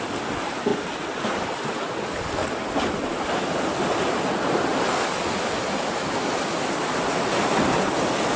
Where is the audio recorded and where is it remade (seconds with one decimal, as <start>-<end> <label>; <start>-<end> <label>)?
0.0-8.4 recorded